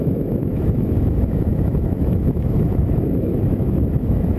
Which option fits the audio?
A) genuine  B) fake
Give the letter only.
B